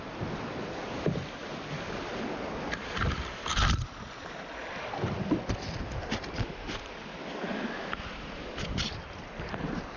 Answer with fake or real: real